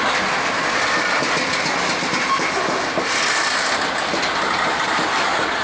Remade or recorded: recorded